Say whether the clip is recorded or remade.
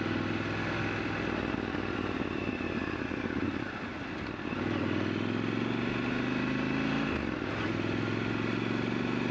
recorded